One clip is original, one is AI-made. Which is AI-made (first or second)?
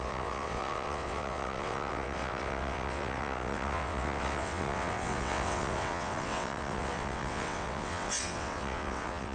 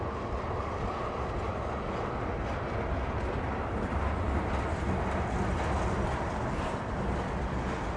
first